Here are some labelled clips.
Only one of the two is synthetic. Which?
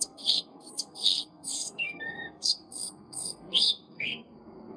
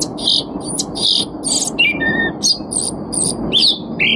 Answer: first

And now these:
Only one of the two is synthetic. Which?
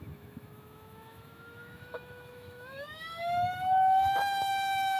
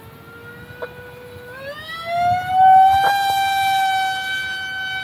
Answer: first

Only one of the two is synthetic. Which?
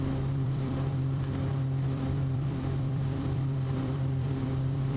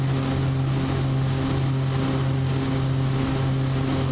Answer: first